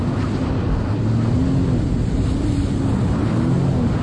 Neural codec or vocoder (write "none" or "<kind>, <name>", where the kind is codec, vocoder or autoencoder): none